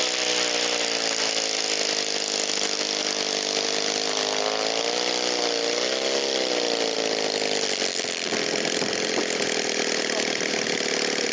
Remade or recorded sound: recorded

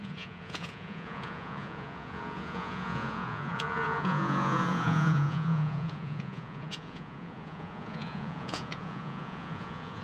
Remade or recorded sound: remade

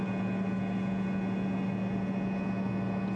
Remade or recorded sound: recorded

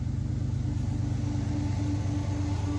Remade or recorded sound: recorded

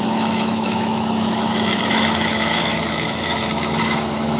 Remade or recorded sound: remade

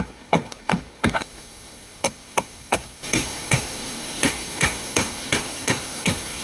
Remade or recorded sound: remade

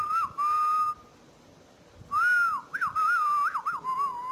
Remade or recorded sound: recorded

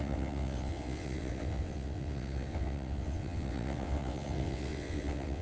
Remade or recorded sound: remade